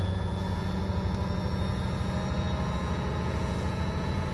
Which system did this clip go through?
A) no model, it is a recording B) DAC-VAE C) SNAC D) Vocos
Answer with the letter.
D